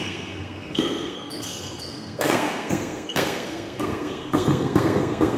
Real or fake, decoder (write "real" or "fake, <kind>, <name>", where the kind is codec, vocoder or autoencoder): fake, codec, SNAC